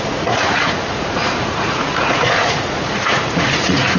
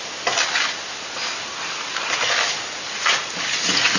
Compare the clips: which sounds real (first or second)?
second